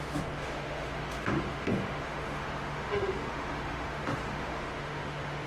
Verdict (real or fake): fake